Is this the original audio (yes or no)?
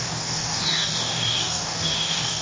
no